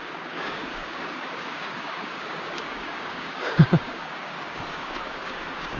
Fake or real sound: fake